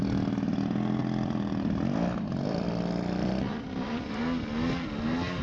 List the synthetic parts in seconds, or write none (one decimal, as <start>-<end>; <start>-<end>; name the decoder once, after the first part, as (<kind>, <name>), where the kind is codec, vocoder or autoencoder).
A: 1.0-4.2 (vocoder, BigVGAN v2)